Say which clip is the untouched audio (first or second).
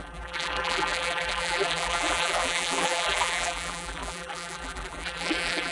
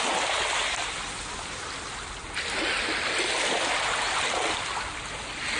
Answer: second